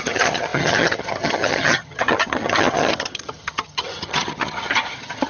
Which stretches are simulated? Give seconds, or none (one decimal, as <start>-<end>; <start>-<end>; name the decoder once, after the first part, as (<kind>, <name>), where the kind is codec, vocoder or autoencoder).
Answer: 0.0-5.3 (vocoder, HiFi-GAN)